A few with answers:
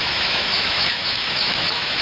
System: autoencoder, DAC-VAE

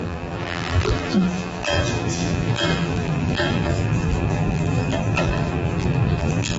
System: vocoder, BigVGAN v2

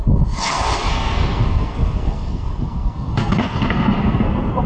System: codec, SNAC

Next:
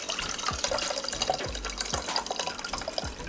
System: none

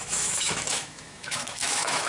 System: autoencoder, DAC-VAE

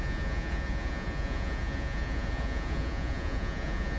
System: vocoder, Vocos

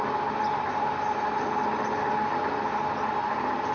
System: none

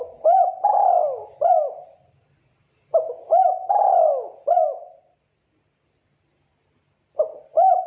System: none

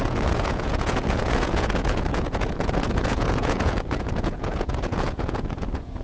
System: vocoder, Vocos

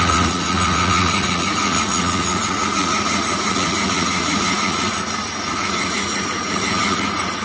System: vocoder, Vocos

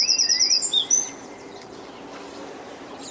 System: none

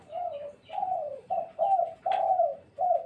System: vocoder, BigVGAN v2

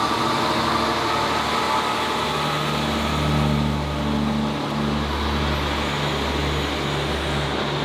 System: none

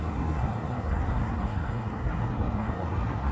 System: codec, SNAC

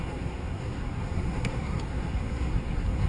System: codec, SNAC